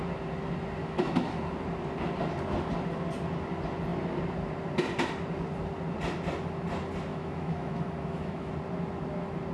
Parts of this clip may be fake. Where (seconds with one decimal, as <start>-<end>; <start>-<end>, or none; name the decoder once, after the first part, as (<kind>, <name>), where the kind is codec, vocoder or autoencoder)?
0.8-1.4 (autoencoder, DAC-VAE); 7.1-8.5